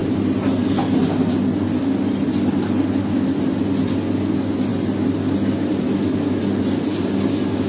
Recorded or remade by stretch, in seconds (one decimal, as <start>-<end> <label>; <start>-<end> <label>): 0.0-7.7 recorded